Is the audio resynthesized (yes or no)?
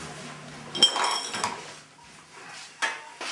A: no